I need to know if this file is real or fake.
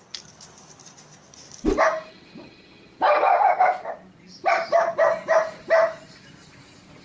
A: real